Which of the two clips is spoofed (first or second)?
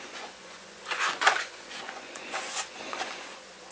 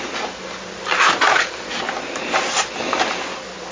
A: first